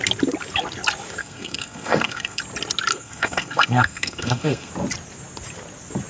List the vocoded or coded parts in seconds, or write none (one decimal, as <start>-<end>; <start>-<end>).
1.2-2.4; 2.9-4.7